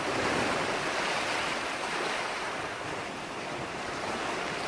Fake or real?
real